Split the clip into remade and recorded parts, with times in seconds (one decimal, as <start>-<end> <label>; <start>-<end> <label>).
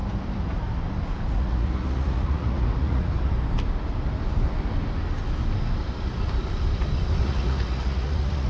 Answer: 0.0-1.4 recorded; 1.4-3.1 remade; 3.1-7.2 recorded; 7.2-8.5 remade